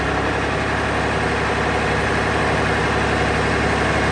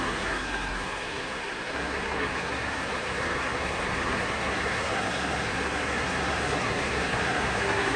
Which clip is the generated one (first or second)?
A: second